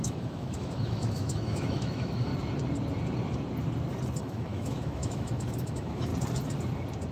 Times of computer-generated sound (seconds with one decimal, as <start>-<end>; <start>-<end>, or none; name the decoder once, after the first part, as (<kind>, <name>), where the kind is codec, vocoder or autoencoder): 0.0-2.3 (autoencoder, DAC-VAE); 4.2-6.1